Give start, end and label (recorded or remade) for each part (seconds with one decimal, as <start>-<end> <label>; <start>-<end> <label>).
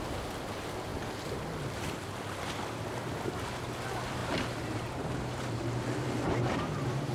0.0-4.2 recorded; 4.2-7.1 remade